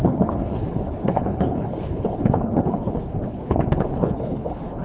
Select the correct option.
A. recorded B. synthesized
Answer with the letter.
B